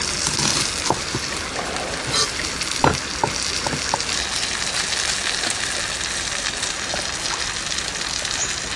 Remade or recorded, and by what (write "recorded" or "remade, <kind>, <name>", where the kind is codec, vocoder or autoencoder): recorded